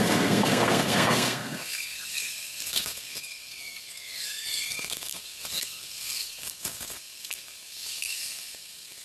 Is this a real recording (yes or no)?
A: no